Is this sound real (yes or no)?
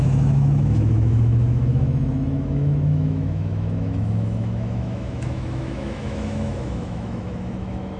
no